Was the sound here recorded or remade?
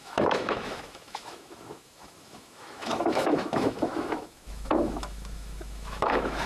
remade